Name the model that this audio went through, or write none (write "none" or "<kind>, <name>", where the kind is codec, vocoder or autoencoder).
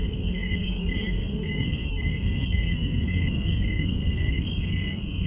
codec, SNAC